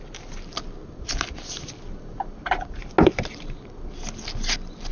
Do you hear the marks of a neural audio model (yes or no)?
no